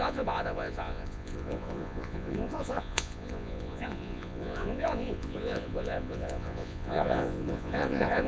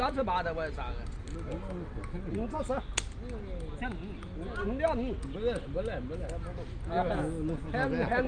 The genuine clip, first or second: second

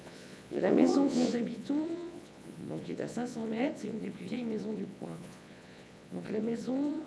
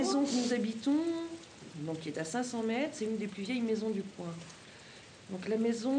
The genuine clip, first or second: second